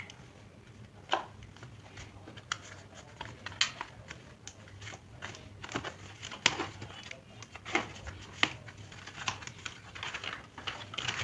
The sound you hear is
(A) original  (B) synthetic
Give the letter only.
A